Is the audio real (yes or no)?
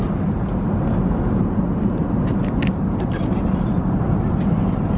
yes